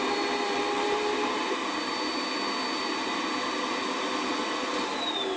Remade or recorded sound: recorded